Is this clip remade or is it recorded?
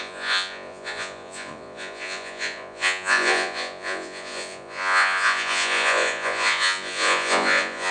remade